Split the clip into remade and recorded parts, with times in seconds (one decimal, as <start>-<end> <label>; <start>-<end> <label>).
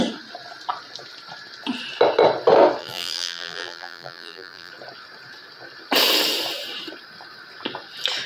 0.0-2.8 recorded; 2.8-4.7 remade; 4.7-8.3 recorded